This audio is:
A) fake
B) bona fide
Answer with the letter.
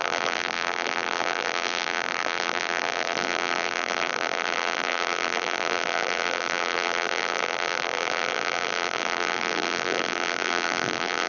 A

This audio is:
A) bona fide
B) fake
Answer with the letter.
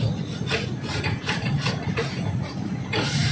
B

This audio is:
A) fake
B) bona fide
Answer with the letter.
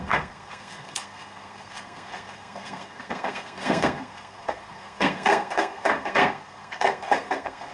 A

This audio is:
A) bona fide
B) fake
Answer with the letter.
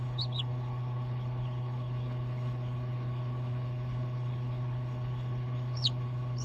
B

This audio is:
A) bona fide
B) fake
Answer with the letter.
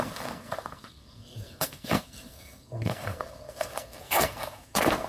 B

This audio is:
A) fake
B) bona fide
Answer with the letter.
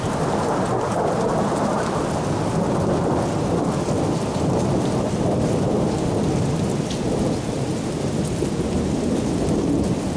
B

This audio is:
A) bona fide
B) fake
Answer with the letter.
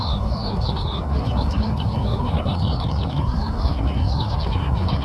B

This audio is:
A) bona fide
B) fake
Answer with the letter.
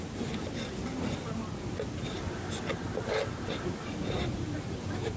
A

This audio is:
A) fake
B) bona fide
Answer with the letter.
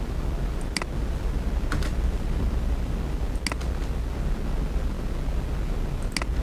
B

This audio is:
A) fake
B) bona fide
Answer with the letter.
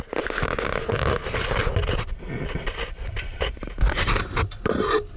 B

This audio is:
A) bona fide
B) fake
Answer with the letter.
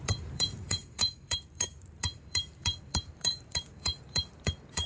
B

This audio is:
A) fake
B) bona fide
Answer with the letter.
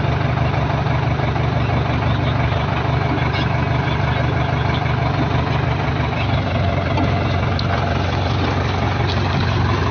B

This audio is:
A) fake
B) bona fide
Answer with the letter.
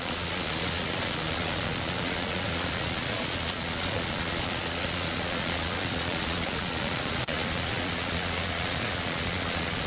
A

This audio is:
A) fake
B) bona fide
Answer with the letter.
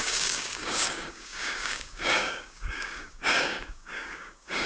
A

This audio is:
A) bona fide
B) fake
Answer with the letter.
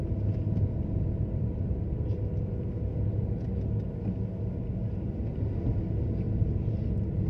A